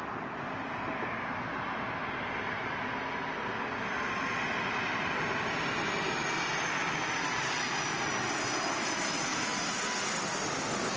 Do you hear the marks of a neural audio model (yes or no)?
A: no